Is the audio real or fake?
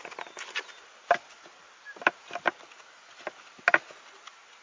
real